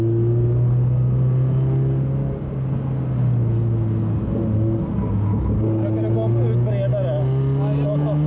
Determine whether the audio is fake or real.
real